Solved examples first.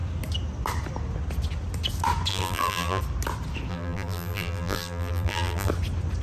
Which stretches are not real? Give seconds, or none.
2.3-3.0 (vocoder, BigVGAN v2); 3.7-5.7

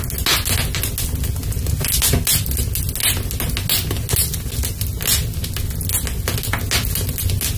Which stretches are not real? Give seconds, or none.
none

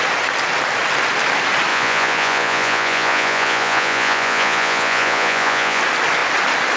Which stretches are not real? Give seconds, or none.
1.7-5.8 (vocoder, Vocos)

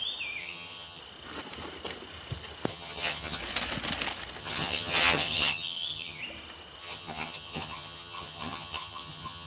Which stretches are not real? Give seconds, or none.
0.4-1.0 (vocoder, HiFi-GAN); 2.7-3.4; 4.4-6.2; 6.8-9.5

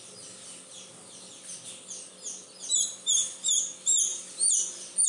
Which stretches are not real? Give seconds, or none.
none

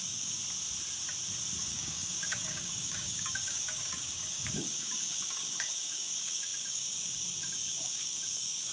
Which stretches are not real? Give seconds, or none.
0.0-0.4 (codec, DAC); 1.6-8.7